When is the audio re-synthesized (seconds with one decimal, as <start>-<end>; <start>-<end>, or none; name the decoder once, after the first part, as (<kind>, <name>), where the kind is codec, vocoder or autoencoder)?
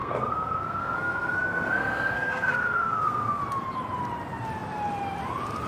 0.0-3.4 (codec, SNAC)